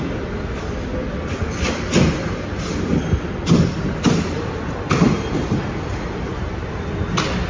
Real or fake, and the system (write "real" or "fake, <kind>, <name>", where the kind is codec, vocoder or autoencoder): real